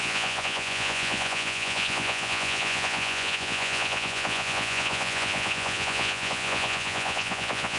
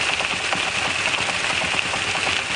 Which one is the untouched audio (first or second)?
second